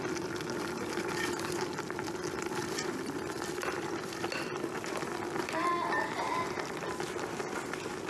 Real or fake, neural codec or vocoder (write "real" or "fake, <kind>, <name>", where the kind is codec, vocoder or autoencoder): real